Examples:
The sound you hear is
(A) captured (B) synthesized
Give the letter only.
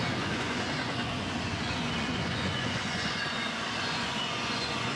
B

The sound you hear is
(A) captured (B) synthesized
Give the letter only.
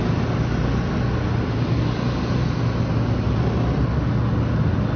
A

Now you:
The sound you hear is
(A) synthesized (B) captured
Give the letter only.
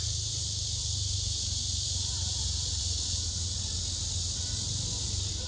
B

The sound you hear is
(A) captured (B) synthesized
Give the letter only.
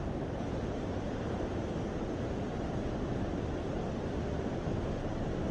A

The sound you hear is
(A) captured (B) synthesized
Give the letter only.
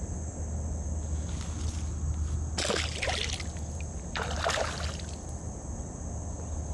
A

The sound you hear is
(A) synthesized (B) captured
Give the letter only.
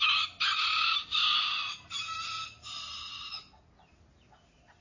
B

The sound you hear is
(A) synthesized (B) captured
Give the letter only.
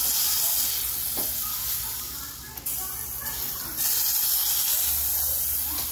B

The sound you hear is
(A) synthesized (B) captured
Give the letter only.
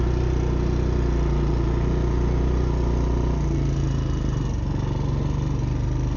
B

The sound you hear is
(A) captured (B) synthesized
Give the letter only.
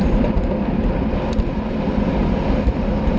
A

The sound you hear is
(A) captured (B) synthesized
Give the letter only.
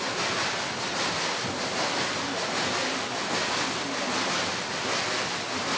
A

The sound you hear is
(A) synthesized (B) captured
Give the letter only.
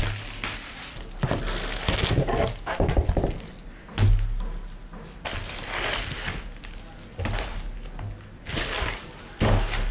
B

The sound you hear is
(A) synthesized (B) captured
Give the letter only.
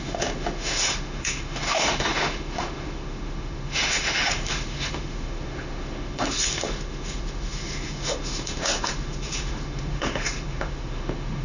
A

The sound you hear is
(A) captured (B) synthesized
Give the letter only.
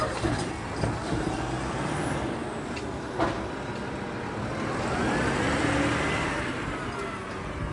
A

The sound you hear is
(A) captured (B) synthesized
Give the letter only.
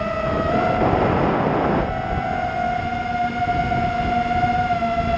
A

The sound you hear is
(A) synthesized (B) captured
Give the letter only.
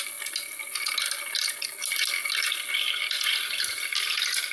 B